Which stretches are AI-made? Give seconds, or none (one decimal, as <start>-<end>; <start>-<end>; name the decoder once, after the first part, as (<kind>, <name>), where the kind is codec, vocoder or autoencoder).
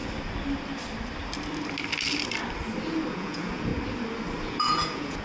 3.1-3.7 (vocoder, Vocos); 4.4-5.2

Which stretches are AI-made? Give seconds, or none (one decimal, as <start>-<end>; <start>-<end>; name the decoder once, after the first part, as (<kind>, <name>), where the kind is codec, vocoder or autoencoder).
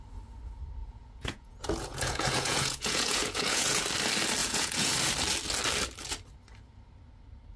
0.8-3.8 (vocoder, Vocos); 4.4-4.9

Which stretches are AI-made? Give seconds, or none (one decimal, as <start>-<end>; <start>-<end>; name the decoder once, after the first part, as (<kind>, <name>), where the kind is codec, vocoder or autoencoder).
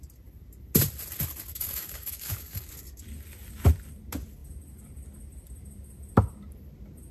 1.5-2.7 (codec, DAC)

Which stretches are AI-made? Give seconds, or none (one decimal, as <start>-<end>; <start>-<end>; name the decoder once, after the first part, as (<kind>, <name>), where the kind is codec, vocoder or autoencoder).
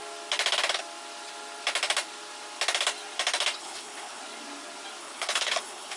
3.6-4.2 (codec, HILCodec); 5.0-6.0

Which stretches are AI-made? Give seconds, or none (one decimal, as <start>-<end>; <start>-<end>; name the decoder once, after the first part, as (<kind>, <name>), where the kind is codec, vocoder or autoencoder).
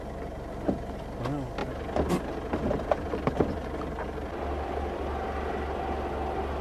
none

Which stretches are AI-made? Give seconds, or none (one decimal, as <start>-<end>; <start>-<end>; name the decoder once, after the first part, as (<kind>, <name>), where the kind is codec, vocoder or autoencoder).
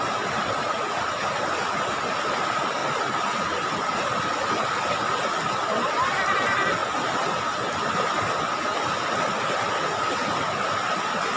0.6-1.4 (vocoder, Vocos)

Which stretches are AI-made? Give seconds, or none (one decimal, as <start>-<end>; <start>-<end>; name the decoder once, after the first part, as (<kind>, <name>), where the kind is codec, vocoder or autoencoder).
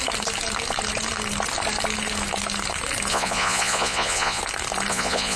3.1-4.4 (vocoder, Vocos); 4.9-5.4